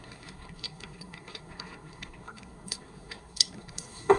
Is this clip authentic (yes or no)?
no